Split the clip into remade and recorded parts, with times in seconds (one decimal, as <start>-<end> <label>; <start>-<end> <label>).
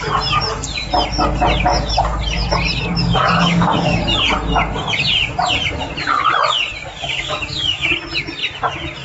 0.0-3.0 recorded; 3.0-4.0 remade; 4.0-6.8 recorded; 6.8-7.9 remade; 7.9-9.0 recorded